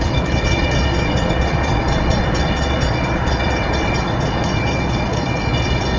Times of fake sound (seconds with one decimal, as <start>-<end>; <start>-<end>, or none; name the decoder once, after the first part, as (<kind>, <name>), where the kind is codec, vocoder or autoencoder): 0.0-6.0 (vocoder, Vocos)